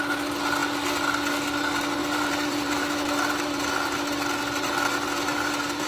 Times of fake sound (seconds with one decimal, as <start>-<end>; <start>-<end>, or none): 2.0-3.7; 5.3-5.9